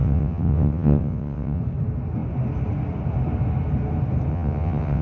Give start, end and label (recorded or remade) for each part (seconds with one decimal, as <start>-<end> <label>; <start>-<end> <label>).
0.0-1.6 remade; 1.6-4.3 recorded; 4.3-5.0 remade